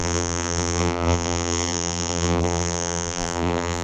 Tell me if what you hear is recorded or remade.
remade